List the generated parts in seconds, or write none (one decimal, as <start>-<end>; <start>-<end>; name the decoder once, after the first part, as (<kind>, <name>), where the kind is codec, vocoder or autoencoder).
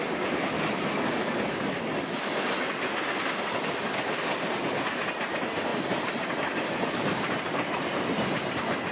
5.7-6.6 (vocoder, BigVGAN v2)